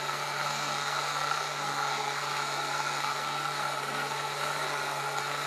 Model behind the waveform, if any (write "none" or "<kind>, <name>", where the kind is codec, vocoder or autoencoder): codec, SNAC